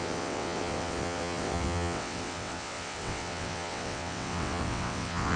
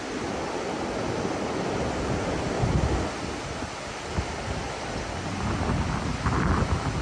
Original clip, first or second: second